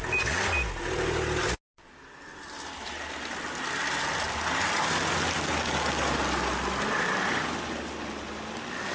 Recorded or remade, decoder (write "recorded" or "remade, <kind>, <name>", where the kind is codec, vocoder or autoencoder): recorded